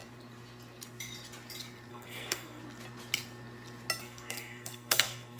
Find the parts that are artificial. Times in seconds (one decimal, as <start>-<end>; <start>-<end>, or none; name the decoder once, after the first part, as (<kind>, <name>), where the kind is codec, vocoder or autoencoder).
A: 1.9-2.6 (codec, SNAC); 4.0-5.4